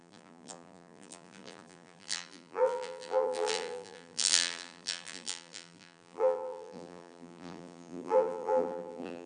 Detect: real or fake fake